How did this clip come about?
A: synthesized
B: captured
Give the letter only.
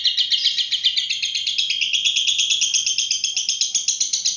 B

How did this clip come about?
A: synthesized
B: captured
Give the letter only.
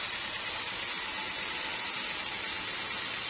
B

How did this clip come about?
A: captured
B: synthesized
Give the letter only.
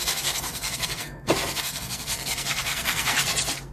B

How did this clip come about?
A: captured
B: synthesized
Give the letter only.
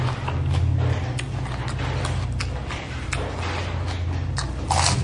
A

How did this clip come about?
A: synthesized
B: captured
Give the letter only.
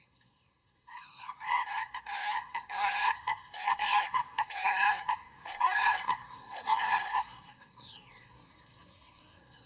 A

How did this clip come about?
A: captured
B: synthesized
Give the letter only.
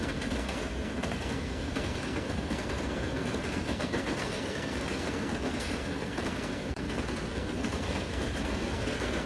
B